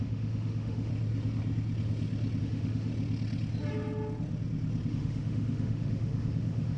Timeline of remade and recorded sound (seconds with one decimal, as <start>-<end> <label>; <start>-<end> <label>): 0.0-0.9 remade; 0.9-2.4 recorded; 2.4-2.9 remade; 2.9-4.9 recorded; 4.9-6.8 remade